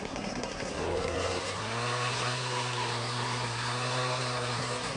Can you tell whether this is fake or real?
fake